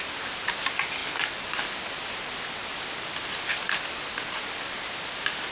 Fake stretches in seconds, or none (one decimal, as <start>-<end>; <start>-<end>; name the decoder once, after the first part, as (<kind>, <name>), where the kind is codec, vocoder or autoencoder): none